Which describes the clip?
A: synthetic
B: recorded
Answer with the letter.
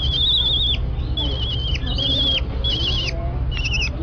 B